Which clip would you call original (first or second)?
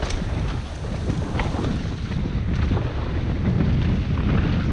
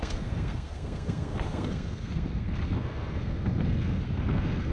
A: first